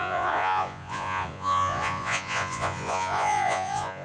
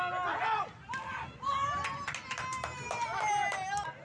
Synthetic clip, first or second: first